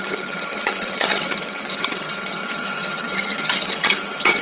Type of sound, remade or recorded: remade